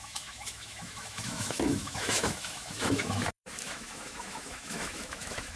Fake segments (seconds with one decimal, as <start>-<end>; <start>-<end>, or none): 0.0-5.6